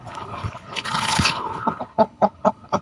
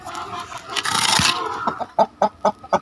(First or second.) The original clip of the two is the second